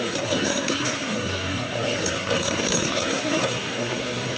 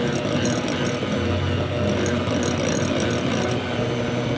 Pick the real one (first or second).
second